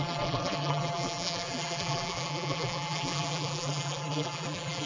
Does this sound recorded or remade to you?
remade